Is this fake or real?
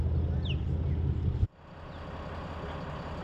real